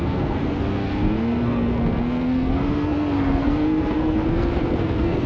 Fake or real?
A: fake